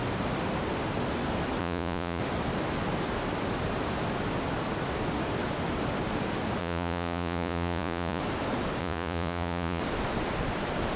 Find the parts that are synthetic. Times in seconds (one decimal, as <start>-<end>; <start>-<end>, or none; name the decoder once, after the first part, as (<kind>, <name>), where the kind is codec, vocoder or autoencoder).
1.6-2.2 (vocoder, Vocos); 6.6-8.2; 8.8-9.8